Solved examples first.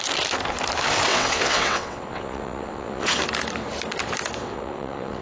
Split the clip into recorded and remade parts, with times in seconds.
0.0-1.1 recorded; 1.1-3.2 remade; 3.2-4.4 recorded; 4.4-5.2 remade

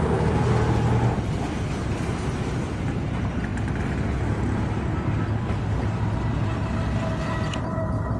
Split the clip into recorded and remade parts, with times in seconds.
0.0-8.2 recorded

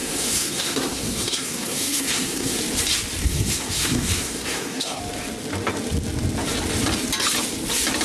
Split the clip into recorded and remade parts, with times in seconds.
0.0-2.6 remade; 2.6-3.2 recorded; 3.2-5.0 remade; 5.0-8.0 recorded

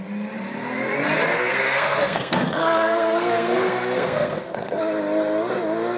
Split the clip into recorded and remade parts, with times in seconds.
0.0-1.2 recorded; 1.2-4.8 remade; 4.8-6.0 recorded

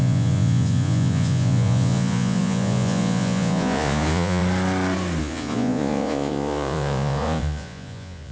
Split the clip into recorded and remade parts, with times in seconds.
0.0-4.4 remade; 4.4-5.2 recorded; 5.2-8.3 remade

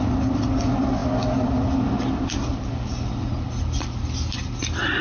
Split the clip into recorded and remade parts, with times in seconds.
0.0-5.0 recorded